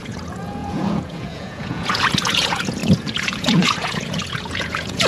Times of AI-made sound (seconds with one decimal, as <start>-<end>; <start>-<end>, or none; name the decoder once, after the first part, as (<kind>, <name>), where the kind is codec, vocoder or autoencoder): 0.0-5.1 (vocoder, Vocos)